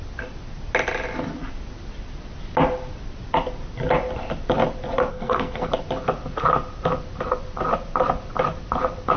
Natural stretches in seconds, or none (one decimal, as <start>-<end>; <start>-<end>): 0.0-5.1; 5.7-9.2